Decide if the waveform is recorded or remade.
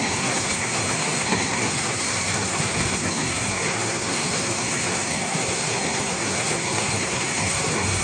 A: remade